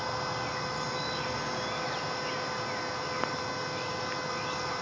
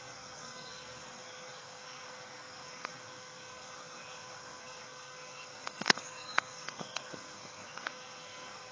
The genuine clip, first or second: first